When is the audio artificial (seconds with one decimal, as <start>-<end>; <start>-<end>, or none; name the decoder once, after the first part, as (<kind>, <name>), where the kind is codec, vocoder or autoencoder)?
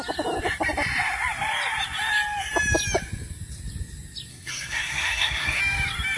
4.3-5.6 (codec, SNAC)